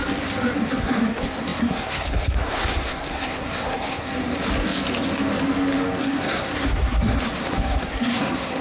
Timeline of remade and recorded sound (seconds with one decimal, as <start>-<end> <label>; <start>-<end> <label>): 0.0-0.8 recorded; 0.8-4.1 remade; 4.1-6.0 recorded; 6.0-8.6 remade